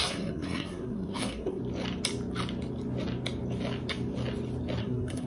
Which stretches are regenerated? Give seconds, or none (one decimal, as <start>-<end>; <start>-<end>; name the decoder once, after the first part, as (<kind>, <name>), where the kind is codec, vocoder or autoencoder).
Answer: 0.0-1.6 (codec, SNAC); 4.8-5.3